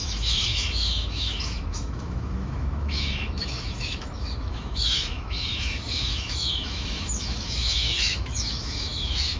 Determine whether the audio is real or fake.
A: fake